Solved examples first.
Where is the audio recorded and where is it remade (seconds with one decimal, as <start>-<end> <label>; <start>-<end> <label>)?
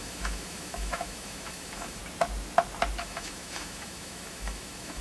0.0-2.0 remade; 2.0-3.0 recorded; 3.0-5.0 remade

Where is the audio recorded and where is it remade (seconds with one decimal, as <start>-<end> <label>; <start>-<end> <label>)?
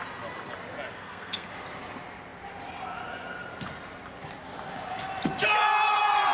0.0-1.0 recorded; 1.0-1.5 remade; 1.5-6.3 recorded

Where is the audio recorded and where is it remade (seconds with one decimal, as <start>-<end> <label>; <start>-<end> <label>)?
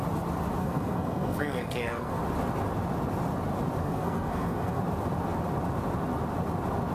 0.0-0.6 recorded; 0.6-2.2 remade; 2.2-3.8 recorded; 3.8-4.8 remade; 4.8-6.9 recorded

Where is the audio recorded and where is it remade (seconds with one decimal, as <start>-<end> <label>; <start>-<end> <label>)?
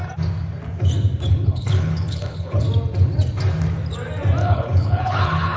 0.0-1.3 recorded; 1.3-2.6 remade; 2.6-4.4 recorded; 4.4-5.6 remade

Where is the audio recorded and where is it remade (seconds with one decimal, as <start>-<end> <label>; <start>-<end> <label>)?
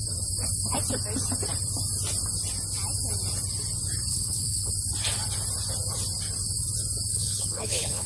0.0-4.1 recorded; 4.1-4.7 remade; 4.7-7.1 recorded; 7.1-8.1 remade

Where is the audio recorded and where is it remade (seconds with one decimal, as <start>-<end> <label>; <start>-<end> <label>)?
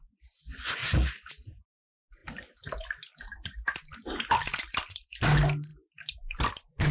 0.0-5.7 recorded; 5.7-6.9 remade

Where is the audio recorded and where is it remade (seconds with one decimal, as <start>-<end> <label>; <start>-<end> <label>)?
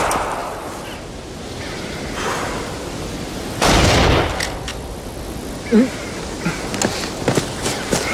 0.0-0.4 recorded; 0.4-1.1 remade; 1.1-8.1 recorded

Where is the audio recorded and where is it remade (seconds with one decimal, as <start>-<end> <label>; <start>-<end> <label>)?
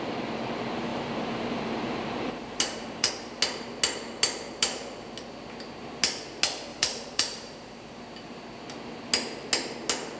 0.0-0.9 recorded; 0.9-3.1 remade; 3.1-6.7 recorded; 6.7-8.0 remade; 8.0-10.2 recorded